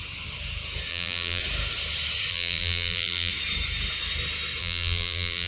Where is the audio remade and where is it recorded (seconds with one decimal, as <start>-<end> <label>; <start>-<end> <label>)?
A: 0.0-0.9 recorded; 0.9-1.4 remade; 1.4-2.3 recorded; 2.3-3.3 remade; 3.3-4.6 recorded; 4.6-5.5 remade

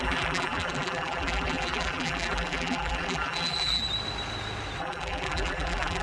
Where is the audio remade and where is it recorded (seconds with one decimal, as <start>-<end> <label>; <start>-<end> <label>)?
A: 0.0-3.8 remade; 3.8-4.8 recorded; 4.8-6.0 remade

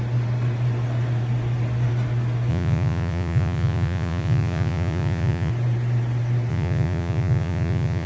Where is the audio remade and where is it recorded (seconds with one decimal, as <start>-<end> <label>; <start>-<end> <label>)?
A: 0.0-2.5 recorded; 2.5-5.5 remade; 5.5-6.5 recorded; 6.5-8.1 remade

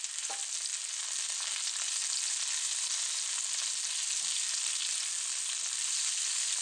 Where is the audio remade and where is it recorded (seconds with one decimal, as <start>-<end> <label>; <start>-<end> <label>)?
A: 0.0-6.6 recorded

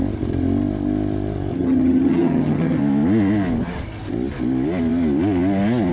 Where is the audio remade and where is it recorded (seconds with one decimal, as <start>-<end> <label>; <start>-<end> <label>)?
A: 0.0-1.5 recorded; 1.5-2.8 remade; 2.8-5.9 recorded

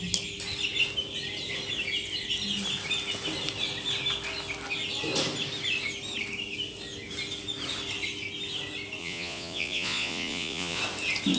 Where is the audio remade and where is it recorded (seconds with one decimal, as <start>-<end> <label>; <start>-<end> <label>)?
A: 0.0-9.0 recorded; 9.0-10.8 remade; 10.8-11.4 recorded

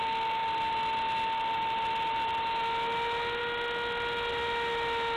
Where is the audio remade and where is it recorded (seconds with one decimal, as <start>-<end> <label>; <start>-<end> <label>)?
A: 0.0-5.2 recorded

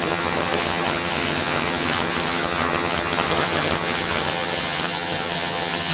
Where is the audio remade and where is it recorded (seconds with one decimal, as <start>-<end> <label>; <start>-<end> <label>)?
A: 0.0-5.9 remade